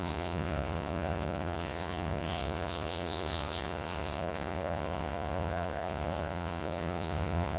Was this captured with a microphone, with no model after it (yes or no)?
no